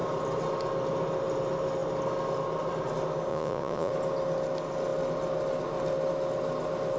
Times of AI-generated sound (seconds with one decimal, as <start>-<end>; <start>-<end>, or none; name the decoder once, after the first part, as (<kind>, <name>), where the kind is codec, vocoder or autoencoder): 3.3-3.9 (vocoder, Vocos)